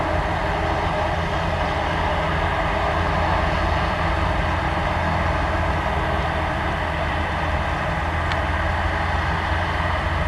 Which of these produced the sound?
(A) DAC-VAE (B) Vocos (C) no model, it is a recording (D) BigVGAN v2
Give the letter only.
C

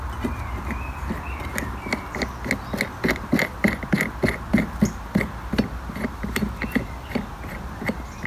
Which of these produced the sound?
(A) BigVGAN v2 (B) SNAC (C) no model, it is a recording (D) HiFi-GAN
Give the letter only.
C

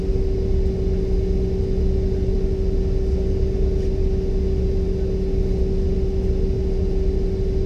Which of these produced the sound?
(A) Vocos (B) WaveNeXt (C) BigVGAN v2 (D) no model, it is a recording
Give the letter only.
D